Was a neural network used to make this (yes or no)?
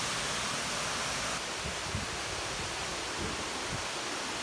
no